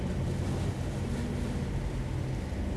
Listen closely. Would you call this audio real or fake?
real